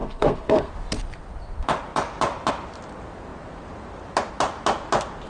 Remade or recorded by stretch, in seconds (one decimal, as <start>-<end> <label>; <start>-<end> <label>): 0.0-0.7 remade; 0.7-5.3 recorded